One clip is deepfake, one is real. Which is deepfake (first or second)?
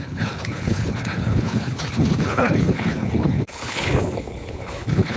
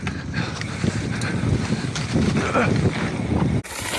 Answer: first